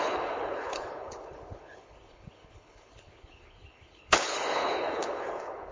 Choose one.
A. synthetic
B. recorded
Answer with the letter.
A